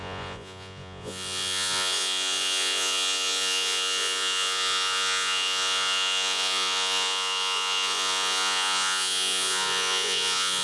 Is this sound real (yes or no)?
no